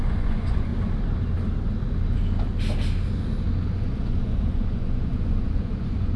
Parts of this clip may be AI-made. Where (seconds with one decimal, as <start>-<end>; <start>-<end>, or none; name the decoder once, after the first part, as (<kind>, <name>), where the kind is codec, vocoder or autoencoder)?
0.0-0.7 (vocoder, Vocos); 3.7-6.2